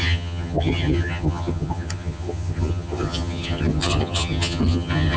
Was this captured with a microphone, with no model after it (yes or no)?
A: no